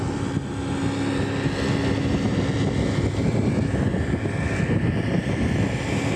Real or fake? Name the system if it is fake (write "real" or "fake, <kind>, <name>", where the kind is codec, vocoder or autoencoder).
real